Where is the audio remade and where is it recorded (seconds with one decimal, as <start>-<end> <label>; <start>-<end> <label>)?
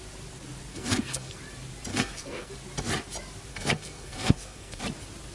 0.0-0.7 recorded; 0.7-1.4 remade; 1.4-1.9 recorded; 1.9-2.5 remade; 2.5-3.5 recorded; 3.5-4.8 remade; 4.8-5.3 recorded